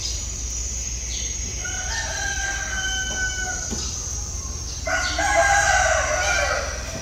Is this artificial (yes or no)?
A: no